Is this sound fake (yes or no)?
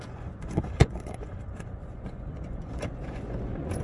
yes